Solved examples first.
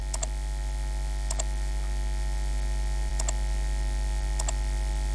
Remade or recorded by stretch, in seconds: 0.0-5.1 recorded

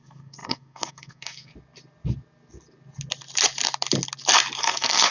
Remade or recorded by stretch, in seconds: 0.0-1.5 remade; 1.5-4.6 recorded; 4.6-5.1 remade